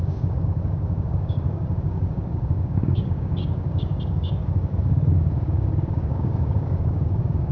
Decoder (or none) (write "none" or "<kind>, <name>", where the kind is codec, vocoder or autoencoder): codec, DAC